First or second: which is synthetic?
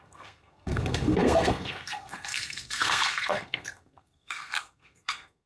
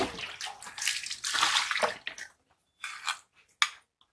first